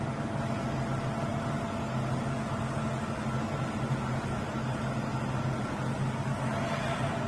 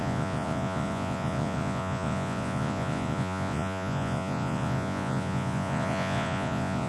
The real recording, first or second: first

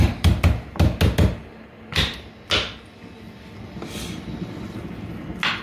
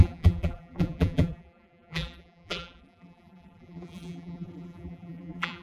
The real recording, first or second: first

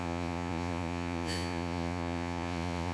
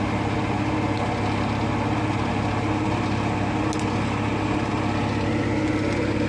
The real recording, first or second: second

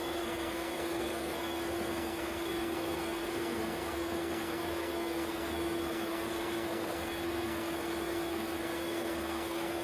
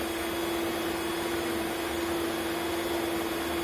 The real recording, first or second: second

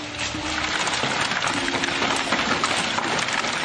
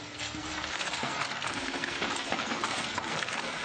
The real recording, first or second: first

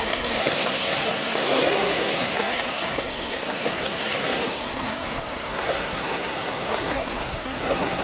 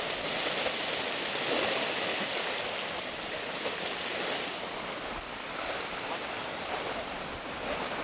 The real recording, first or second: second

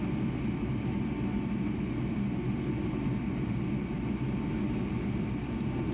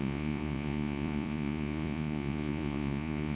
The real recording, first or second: first